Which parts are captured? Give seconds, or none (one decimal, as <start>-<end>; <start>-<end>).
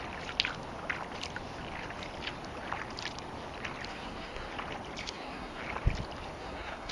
0.0-3.9; 4.5-5.0; 5.6-6.4